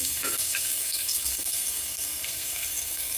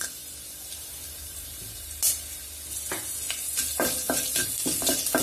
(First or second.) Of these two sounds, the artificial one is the first